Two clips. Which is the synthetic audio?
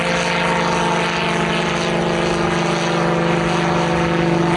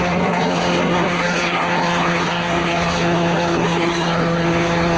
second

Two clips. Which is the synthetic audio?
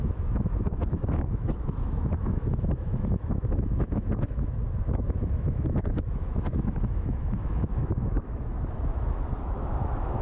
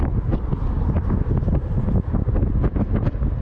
first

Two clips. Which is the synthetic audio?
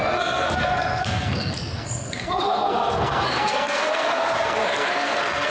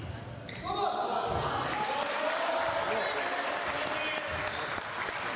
first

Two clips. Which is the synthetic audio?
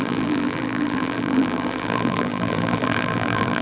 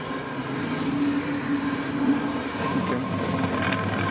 first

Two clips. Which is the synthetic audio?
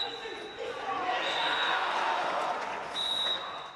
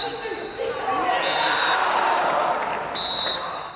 first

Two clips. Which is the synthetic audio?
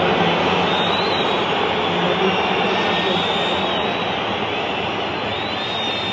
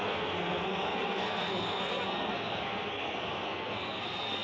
second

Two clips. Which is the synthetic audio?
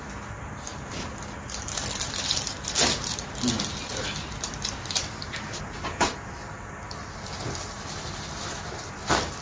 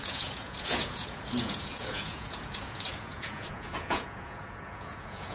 second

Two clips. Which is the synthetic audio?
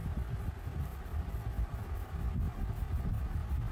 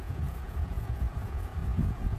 second